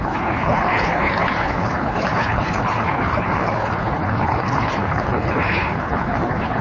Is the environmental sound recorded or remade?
remade